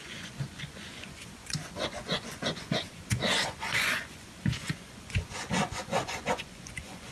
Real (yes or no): no